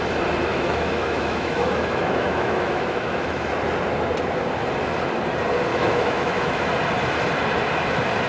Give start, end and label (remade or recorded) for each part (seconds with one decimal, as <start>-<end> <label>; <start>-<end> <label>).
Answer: 0.0-0.5 recorded; 0.5-3.5 remade; 3.5-5.7 recorded; 5.7-6.7 remade; 6.7-8.3 recorded